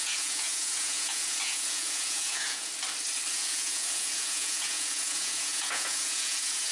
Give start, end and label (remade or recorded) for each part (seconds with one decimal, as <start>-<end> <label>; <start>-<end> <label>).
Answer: 0.0-2.7 remade; 2.7-3.3 recorded; 3.3-6.7 remade